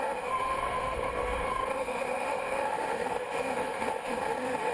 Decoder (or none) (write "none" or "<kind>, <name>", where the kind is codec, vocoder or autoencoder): autoencoder, DAC-VAE